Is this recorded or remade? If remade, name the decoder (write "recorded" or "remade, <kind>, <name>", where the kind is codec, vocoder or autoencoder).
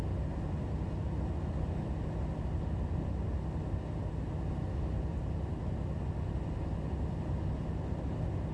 recorded